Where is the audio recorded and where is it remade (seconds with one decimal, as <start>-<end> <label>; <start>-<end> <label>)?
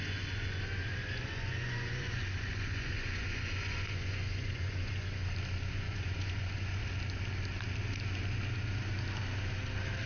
0.0-5.2 remade; 5.2-5.7 recorded; 5.7-6.8 remade; 6.8-10.1 recorded